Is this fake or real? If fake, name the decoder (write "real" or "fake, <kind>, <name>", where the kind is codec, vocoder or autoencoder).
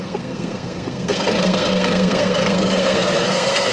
fake, codec, SNAC